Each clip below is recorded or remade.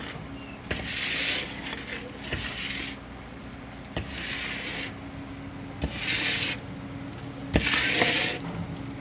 recorded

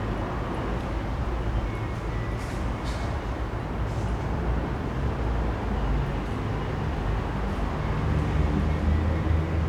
recorded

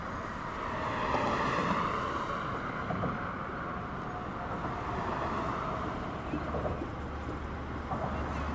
recorded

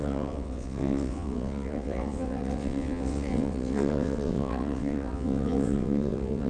remade